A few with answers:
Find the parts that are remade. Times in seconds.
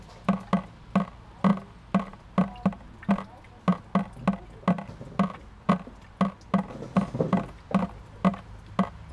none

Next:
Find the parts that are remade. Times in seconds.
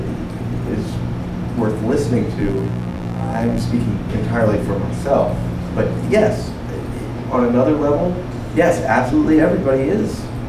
2.4-3.6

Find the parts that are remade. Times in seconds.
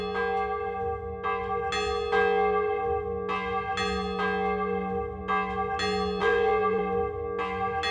6.2-6.8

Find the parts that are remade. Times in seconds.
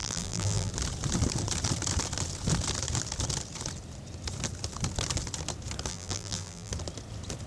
0.0-0.7; 5.9-6.7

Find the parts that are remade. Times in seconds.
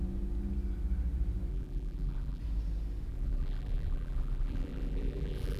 1.5-2.4; 3.1-5.6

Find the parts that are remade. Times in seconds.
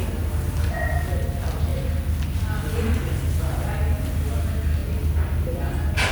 none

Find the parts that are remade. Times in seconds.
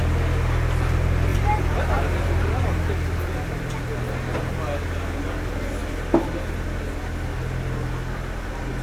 1.3-2.6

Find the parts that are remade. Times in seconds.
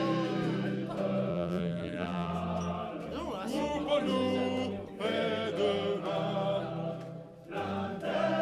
1.3-2.3